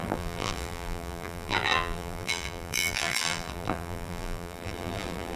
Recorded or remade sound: remade